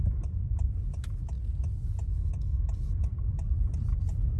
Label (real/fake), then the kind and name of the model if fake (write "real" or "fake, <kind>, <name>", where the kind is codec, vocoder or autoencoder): real